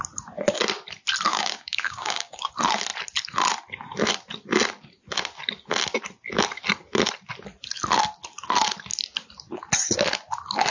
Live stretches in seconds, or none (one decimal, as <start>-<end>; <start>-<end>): 0.0-1.3; 2.5-10.7